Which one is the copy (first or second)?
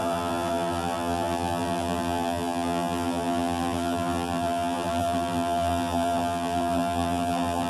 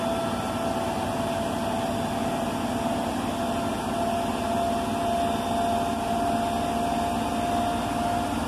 first